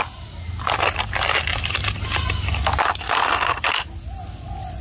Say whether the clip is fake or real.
real